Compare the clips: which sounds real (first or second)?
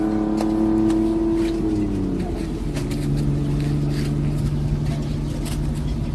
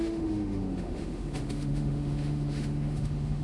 first